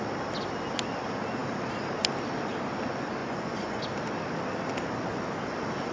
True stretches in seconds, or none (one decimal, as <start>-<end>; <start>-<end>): 0.0-3.2; 3.8-5.9